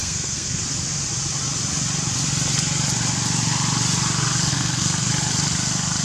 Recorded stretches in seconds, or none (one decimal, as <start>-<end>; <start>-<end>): 0.6-4.5; 5.1-6.0